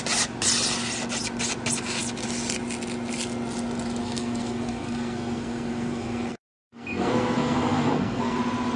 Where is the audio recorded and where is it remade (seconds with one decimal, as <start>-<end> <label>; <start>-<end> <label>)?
0.0-4.0 recorded; 4.0-8.4 remade; 8.4-8.8 recorded